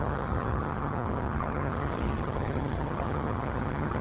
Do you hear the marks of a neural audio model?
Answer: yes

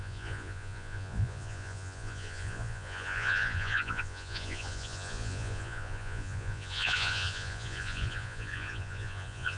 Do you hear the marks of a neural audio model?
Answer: yes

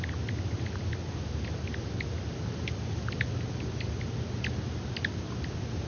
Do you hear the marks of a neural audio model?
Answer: no